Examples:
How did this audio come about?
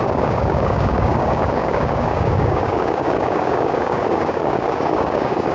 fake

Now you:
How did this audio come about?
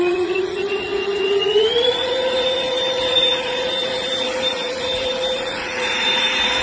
fake